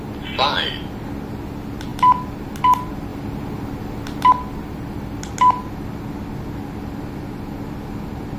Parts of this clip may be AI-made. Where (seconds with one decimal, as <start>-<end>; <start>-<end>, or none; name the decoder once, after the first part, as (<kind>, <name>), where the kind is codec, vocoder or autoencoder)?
none